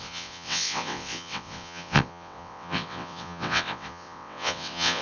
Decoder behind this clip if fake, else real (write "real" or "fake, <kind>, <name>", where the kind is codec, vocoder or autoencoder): fake, vocoder, WaveNeXt